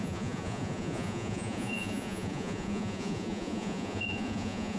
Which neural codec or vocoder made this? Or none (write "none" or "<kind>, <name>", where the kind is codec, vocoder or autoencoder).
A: vocoder, Vocos